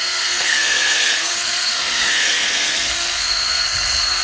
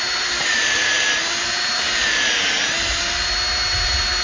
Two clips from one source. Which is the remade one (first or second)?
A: first